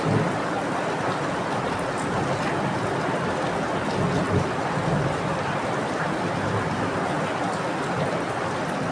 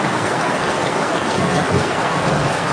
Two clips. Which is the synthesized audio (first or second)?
second